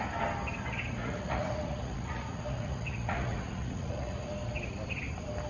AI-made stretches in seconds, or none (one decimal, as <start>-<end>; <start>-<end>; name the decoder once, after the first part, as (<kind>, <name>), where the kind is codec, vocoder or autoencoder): 1.0-4.3 (vocoder, Vocos)